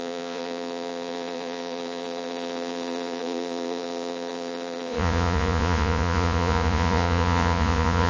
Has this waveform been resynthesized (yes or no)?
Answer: yes